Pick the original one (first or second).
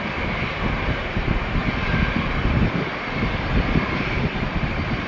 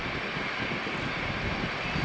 second